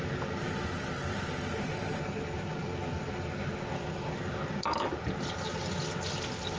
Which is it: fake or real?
real